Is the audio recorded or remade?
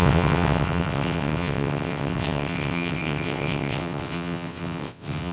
remade